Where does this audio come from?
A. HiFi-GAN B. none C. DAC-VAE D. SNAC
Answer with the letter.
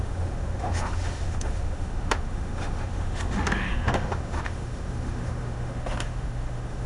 C